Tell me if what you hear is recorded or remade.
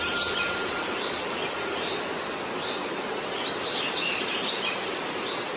recorded